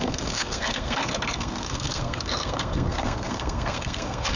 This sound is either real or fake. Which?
fake